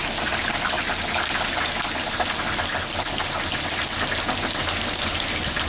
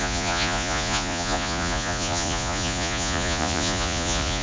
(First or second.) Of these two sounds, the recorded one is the first